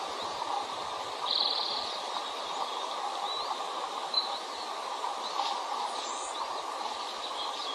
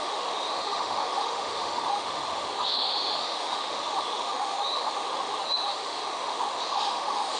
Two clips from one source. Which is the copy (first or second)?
second